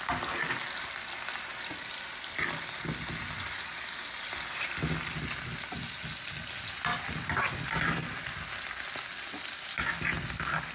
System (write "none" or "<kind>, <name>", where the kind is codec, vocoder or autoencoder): none